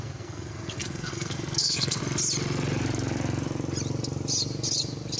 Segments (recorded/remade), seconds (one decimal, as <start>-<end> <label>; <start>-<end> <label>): 0.0-2.0 remade; 2.0-5.2 recorded